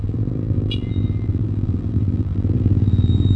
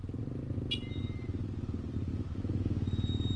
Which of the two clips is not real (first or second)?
first